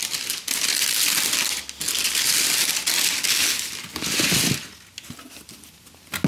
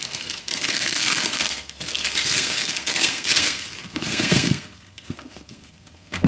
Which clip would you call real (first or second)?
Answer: first